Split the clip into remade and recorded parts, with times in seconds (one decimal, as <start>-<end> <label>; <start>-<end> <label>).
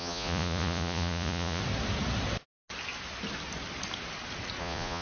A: 0.0-1.6 remade; 1.6-4.6 recorded; 4.6-5.0 remade